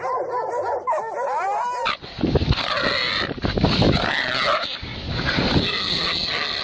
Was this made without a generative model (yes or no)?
yes